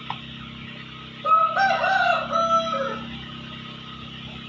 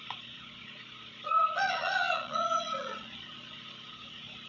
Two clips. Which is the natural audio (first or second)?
first